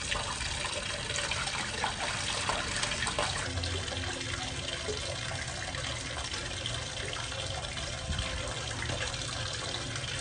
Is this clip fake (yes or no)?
no